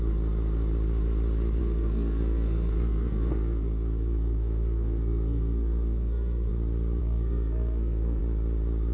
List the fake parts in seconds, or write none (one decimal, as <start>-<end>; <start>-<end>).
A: 1.6-6.5; 7.0-8.2